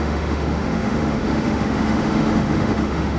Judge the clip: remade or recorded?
remade